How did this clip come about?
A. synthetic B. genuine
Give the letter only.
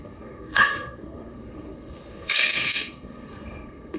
A